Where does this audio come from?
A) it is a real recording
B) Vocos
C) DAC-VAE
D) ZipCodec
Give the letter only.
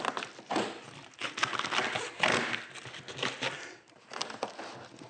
A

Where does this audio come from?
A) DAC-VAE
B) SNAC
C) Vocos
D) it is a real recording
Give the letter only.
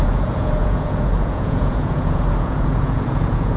C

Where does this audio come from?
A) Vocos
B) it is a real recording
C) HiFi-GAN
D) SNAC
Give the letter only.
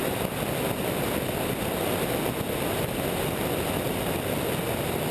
B